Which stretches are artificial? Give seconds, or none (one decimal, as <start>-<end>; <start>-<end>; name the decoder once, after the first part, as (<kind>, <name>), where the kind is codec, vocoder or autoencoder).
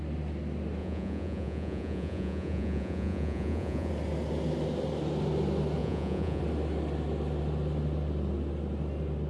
0.8-3.9 (vocoder, Vocos); 5.8-6.4